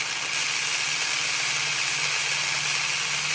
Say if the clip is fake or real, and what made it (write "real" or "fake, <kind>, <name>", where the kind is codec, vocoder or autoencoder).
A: real